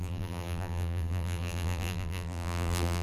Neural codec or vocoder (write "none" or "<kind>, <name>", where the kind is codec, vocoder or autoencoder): vocoder, BigVGAN v2